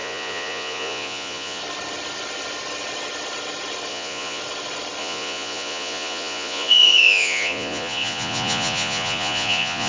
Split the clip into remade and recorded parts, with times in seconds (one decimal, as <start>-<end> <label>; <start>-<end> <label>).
0.0-1.6 remade; 1.6-3.9 recorded; 3.9-4.4 remade; 4.4-5.0 recorded; 5.0-9.9 remade